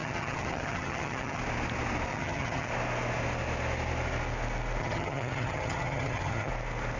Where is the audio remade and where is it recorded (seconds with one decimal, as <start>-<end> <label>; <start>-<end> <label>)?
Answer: 0.0-1.4 remade; 1.4-2.1 recorded; 2.1-2.7 remade; 2.7-4.8 recorded; 4.8-6.5 remade; 6.5-7.0 recorded

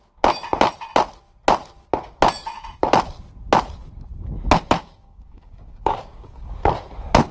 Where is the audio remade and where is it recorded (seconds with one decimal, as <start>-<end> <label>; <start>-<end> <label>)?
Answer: 0.0-4.8 recorded; 4.8-6.7 remade; 6.7-7.3 recorded

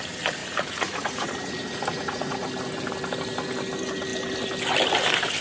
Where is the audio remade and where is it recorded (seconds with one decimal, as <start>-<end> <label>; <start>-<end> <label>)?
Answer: 0.0-0.4 recorded; 0.4-2.5 remade; 2.5-5.4 recorded

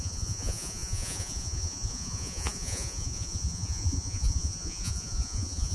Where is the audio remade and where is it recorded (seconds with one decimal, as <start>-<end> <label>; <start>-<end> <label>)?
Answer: 0.0-5.7 remade

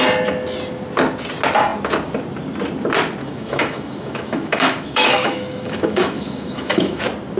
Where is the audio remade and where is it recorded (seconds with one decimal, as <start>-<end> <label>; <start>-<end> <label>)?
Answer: 0.0-3.2 recorded; 3.2-7.0 remade; 7.0-7.4 recorded